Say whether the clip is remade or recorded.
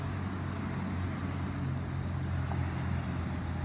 recorded